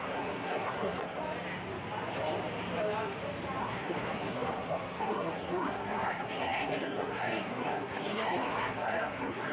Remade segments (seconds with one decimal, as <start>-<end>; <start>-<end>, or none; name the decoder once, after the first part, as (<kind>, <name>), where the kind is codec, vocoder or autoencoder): 0.0-1.2 (codec, SNAC); 3.6-9.5